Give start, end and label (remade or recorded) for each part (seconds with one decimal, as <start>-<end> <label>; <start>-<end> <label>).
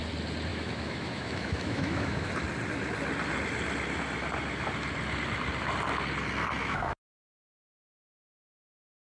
0.0-0.5 recorded; 0.5-2.3 remade; 2.3-6.6 recorded; 6.6-8.6 remade; 8.6-9.0 recorded